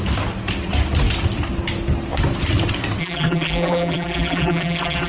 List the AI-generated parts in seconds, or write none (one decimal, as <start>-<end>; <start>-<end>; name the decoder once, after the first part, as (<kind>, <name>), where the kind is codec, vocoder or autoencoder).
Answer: 3.0-5.1 (vocoder, BigVGAN v2)